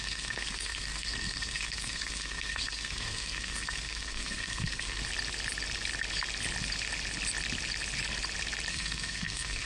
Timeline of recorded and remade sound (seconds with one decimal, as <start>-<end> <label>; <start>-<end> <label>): 0.0-5.0 remade; 5.0-8.7 recorded; 8.7-9.7 remade